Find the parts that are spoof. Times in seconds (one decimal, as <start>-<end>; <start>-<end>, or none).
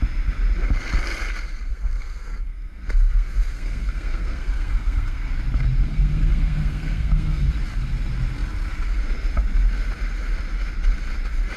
1.7-5.3; 5.8-7.5